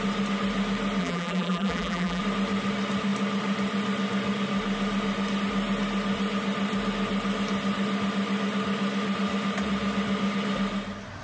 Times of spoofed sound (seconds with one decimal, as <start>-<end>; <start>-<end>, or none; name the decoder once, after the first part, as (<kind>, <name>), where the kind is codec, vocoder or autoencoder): 1.0-2.2 (vocoder, BigVGAN v2)